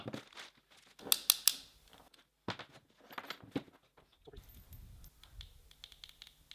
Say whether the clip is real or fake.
real